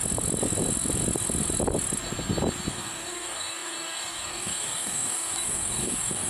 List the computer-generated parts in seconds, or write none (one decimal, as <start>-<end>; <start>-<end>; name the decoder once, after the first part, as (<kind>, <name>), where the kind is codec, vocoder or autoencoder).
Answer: 2.7-6.3 (codec, DAC)